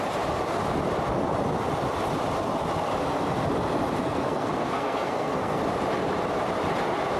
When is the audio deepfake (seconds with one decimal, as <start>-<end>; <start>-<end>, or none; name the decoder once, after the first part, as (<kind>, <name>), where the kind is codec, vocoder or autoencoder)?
4.0-5.6 (codec, SNAC)